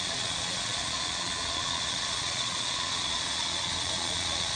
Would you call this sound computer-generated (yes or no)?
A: yes